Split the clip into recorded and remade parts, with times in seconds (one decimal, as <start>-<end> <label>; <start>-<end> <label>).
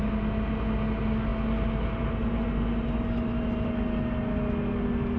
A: 0.0-5.2 recorded